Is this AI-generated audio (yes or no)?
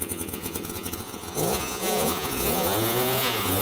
yes